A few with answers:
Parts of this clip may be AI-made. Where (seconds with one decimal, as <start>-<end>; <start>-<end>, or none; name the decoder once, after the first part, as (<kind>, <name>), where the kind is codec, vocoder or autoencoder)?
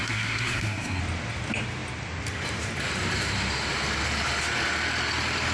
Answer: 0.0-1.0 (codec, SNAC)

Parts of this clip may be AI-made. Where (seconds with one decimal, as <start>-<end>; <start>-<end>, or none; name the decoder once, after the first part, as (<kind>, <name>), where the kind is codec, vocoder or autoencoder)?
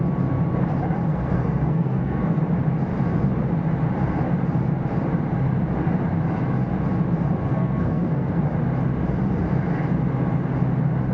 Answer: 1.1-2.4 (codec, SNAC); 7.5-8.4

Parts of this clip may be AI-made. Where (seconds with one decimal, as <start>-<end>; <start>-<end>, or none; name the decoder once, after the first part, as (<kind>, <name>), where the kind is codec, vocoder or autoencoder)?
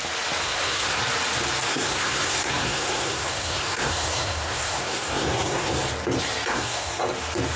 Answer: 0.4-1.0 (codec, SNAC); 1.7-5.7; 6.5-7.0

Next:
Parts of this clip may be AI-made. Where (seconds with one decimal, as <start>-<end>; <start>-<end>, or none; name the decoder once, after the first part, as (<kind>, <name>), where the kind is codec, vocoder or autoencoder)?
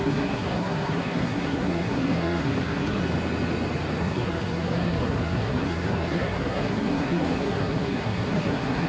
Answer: 0.0-3.0 (codec, SNAC); 4.0-8.9